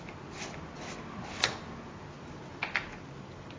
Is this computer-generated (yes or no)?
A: no